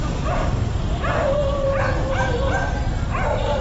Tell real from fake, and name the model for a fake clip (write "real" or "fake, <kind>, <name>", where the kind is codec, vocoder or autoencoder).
real